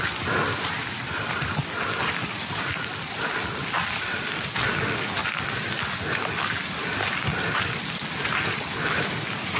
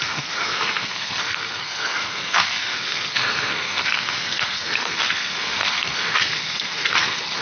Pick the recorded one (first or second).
first